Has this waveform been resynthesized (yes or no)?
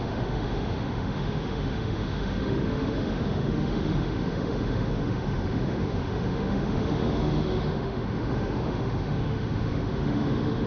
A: yes